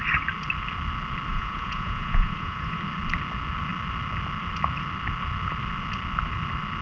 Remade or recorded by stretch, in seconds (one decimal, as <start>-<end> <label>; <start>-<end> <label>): 0.0-1.3 recorded; 1.3-2.8 remade; 2.8-6.8 recorded